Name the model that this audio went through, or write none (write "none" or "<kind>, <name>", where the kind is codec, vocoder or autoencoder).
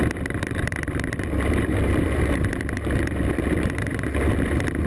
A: vocoder, BigVGAN v2